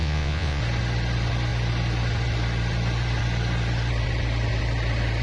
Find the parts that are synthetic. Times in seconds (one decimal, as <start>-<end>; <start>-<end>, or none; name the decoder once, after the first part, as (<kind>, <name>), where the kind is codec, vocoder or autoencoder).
0.0-0.6 (vocoder, Vocos)